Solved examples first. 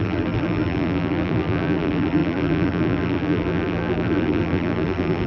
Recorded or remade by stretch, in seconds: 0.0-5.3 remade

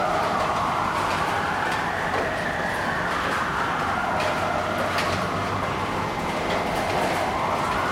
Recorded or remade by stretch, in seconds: 0.0-2.3 remade; 2.3-7.9 recorded

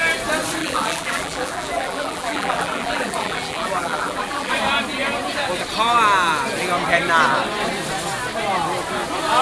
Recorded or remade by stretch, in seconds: 0.0-0.6 recorded; 0.6-4.5 remade; 4.5-9.4 recorded

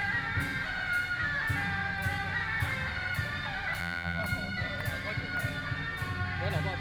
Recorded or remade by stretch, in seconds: 0.0-3.8 recorded; 3.8-4.2 remade; 4.2-6.8 recorded

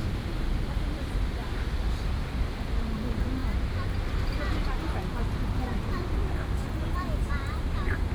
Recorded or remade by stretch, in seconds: 0.0-1.4 remade; 1.4-2.3 recorded; 2.3-3.4 remade; 3.4-5.2 recorded; 5.2-6.2 remade; 6.2-7.3 recorded; 7.3-8.1 remade

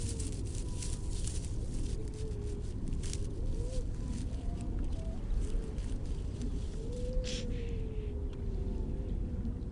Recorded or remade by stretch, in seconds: 0.0-6.0 recorded; 6.0-7.8 remade; 7.8-9.7 recorded

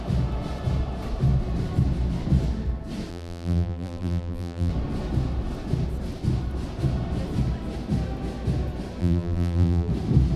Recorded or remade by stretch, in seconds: 0.0-3.1 recorded; 3.1-4.7 remade; 4.7-9.0 recorded; 9.0-9.9 remade; 9.9-10.4 recorded